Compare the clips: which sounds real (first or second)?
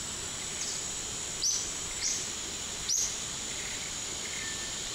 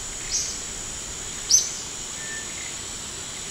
second